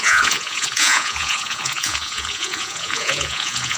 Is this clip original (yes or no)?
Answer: no